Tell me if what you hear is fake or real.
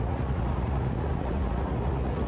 fake